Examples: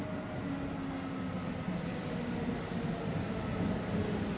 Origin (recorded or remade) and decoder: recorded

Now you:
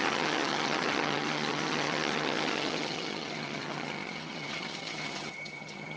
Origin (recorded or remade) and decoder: remade, vocoder, HiFi-GAN